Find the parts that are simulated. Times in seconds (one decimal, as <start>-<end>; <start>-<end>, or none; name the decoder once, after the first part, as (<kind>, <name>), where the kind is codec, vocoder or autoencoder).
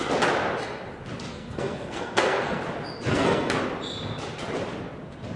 1.3-2.6 (codec, SNAC); 3.1-3.6